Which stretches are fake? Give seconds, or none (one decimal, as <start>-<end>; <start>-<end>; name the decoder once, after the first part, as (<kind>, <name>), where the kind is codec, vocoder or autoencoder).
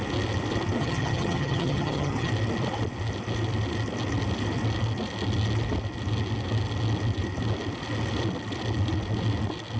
0.8-2.3 (vocoder, HiFi-GAN)